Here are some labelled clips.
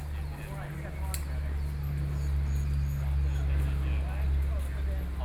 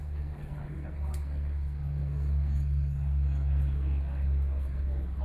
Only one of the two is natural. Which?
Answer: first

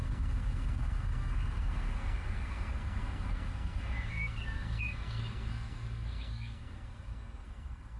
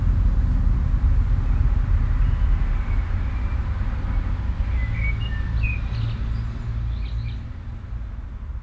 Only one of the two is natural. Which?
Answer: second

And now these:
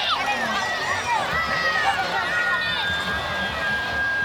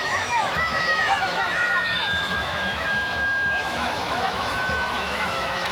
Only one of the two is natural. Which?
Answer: first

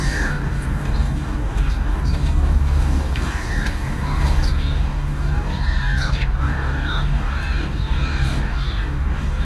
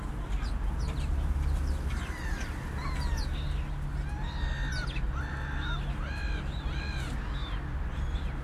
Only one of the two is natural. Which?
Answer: second